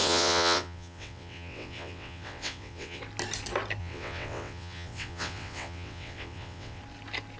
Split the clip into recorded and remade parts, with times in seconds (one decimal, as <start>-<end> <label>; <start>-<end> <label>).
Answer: 0.0-3.0 remade; 3.0-3.8 recorded; 3.8-6.8 remade; 6.8-7.4 recorded